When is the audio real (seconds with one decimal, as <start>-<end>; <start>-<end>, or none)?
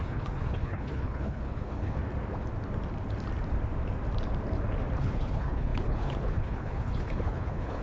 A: 2.0-5.0